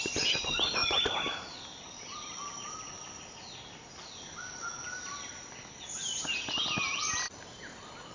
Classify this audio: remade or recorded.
recorded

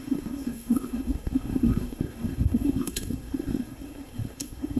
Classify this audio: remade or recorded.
remade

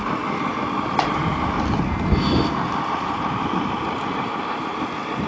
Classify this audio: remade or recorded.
recorded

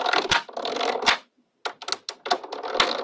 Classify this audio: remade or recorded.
recorded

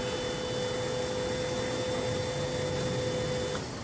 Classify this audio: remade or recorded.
recorded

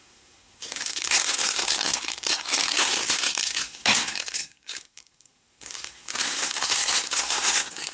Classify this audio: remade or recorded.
remade